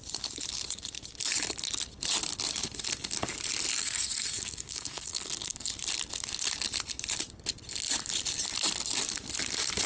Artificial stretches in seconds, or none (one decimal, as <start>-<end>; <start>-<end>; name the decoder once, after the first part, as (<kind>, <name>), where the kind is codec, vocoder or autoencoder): 3.7-5.7 (codec, SNAC)